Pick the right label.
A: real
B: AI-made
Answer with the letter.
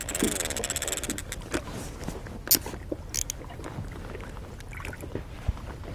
A